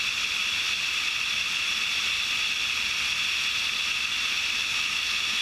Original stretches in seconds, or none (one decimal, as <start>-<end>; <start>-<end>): 0.0-4.6